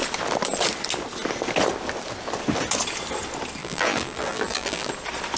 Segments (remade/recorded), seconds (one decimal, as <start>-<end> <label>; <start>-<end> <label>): 0.0-3.6 recorded; 3.6-4.9 remade; 4.9-5.4 recorded